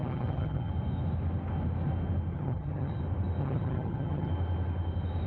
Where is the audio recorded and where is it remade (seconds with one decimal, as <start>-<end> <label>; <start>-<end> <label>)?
0.0-0.7 remade; 0.7-2.3 recorded; 2.3-3.0 remade; 3.0-3.4 recorded; 3.4-4.3 remade; 4.3-5.3 recorded